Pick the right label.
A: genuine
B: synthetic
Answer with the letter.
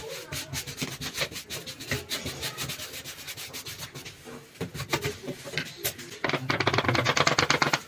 A